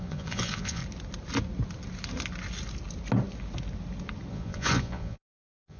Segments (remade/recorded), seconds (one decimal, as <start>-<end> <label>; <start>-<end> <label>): 0.0-0.8 remade; 0.8-4.3 recorded; 4.3-5.8 remade